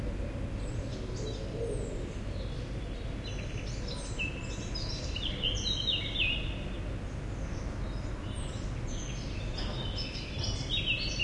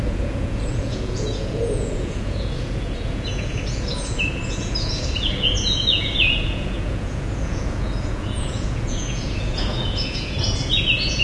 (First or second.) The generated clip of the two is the second